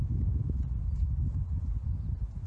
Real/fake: real